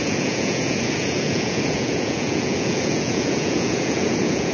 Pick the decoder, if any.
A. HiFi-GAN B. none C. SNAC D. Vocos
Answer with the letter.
D